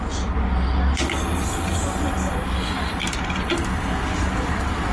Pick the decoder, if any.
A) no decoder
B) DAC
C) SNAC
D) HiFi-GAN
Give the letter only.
A